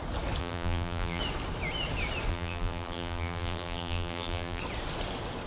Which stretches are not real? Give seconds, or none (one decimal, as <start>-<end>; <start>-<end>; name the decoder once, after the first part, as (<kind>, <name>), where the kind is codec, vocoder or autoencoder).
0.4-1.2 (vocoder, BigVGAN v2); 2.3-4.6